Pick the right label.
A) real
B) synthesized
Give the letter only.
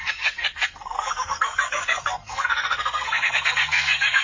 B